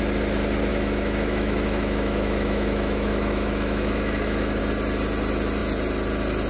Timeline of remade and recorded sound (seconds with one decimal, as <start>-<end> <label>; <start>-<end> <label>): 0.0-0.7 recorded; 0.7-4.6 remade; 4.6-6.5 recorded